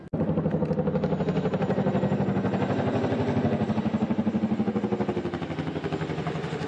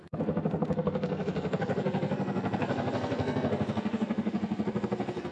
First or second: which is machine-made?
second